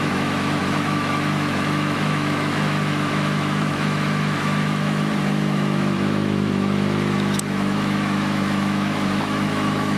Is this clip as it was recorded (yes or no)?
no